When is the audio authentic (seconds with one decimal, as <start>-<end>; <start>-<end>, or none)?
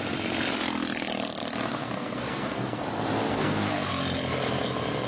0.0-1.8; 2.8-3.3; 3.9-5.1